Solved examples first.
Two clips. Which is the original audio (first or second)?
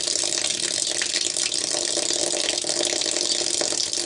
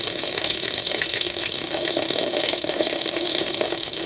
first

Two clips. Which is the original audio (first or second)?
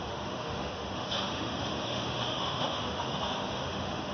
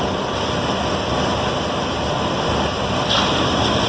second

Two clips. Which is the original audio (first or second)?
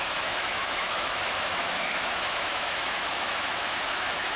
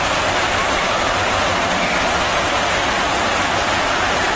second